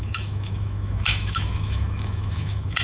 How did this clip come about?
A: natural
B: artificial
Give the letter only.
B